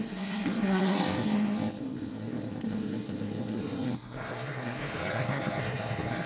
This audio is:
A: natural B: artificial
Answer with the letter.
B